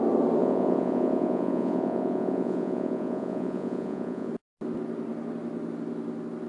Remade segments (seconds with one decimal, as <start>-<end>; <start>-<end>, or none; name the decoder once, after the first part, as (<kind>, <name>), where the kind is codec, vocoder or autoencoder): 0.4-4.3 (vocoder, Vocos)